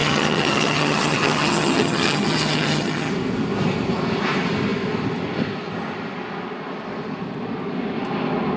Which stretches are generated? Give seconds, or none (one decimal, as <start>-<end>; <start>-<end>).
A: 0.0-3.1